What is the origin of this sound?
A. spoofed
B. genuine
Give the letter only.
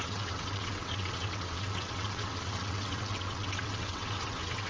A